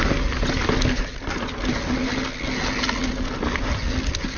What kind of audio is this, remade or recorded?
recorded